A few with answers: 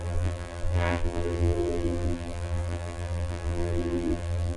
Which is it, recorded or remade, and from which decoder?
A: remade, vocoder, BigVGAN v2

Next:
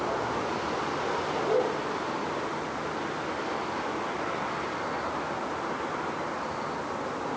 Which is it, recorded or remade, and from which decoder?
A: recorded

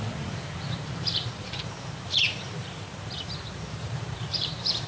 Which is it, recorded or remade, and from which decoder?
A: remade, vocoder, BigVGAN v2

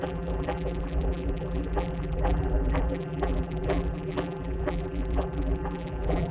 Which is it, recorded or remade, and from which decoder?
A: remade, vocoder, BigVGAN v2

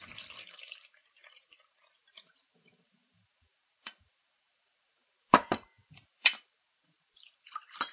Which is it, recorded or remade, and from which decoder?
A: remade, vocoder, BigVGAN v2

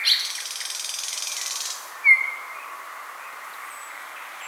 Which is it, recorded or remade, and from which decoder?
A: remade, vocoder, BigVGAN v2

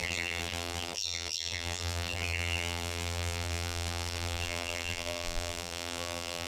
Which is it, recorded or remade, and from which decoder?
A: remade, vocoder, BigVGAN v2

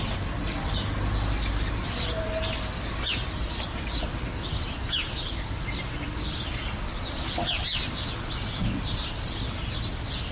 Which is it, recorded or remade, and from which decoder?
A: recorded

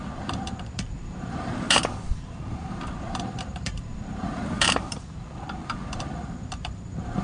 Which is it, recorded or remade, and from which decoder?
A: remade, vocoder, BigVGAN v2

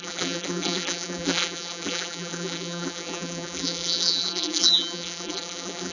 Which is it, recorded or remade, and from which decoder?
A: remade, vocoder, BigVGAN v2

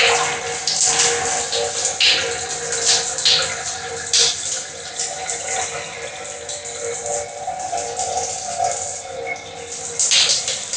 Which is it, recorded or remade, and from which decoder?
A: recorded